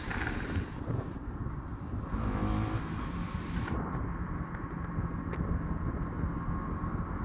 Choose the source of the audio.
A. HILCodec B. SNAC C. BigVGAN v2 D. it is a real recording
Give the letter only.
D